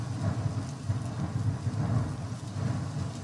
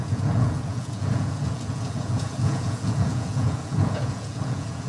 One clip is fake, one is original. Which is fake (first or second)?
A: second